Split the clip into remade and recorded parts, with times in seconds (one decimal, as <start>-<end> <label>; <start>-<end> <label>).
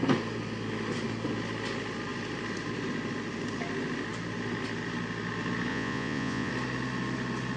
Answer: 0.0-5.7 recorded; 5.7-6.5 remade; 6.5-7.6 recorded